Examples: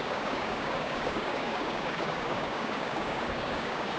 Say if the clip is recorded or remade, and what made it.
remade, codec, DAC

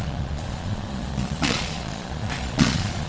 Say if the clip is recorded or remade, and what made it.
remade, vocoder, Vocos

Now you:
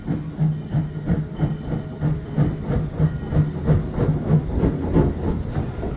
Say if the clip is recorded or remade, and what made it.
recorded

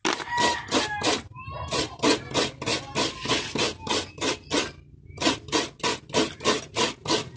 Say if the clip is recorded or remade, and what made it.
recorded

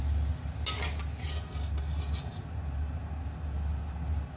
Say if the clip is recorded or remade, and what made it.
recorded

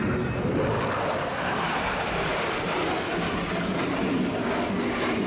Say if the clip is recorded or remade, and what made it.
recorded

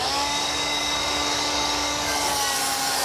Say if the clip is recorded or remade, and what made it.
remade, codec, DAC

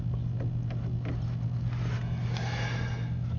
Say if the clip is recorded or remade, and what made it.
recorded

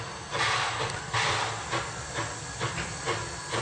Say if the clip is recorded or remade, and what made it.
recorded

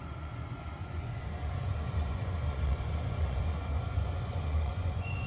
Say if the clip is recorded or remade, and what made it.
remade, vocoder, Vocos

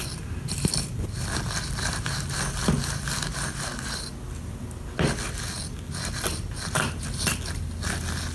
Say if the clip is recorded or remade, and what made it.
recorded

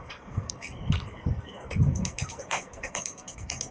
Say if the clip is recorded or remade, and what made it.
remade, codec, SNAC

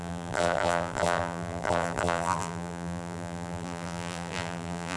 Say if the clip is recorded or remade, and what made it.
remade, vocoder, BigVGAN v2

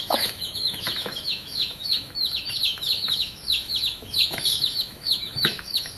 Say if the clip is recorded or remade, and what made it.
remade, autoencoder, DAC-VAE